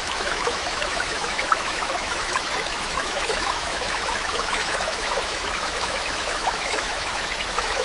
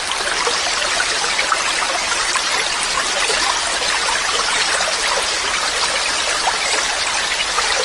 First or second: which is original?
second